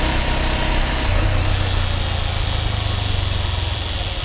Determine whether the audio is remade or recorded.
recorded